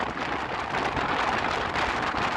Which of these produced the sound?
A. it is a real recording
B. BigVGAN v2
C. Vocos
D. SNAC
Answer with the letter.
A